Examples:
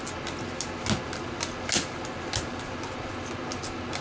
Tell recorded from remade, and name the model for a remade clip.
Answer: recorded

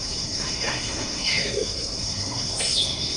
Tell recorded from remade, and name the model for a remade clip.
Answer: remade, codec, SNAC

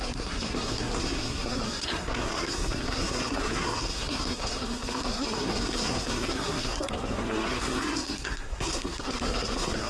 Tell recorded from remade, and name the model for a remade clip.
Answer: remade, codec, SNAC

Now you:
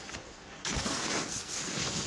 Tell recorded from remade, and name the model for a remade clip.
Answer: remade, codec, SNAC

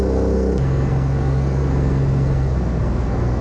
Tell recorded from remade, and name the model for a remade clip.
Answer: remade, codec, SNAC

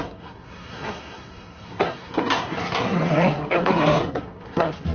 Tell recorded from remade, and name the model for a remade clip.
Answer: remade, codec, SNAC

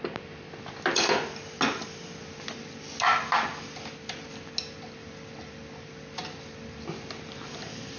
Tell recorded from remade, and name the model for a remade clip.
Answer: recorded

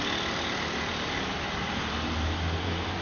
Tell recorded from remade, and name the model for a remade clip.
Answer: recorded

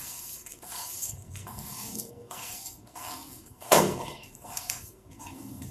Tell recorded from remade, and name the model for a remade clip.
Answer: remade, codec, SNAC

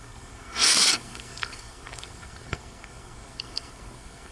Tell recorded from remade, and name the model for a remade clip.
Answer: remade, codec, SNAC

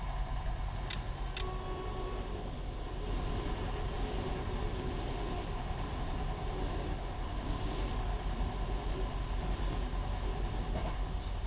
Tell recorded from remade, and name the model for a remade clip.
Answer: recorded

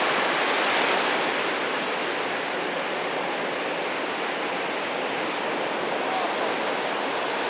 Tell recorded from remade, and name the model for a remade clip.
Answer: recorded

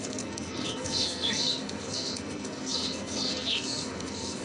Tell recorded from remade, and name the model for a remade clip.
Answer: remade, codec, SNAC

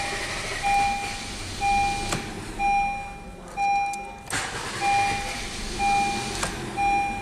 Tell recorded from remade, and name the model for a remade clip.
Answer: recorded